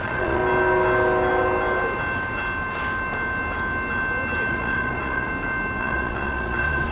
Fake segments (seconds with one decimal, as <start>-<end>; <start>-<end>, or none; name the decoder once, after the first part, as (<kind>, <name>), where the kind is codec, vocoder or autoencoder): 0.0-0.4 (vocoder, Vocos); 4.5-5.3; 5.8-6.9